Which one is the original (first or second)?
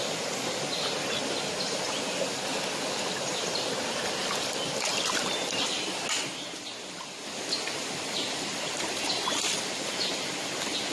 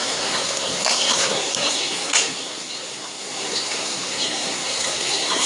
first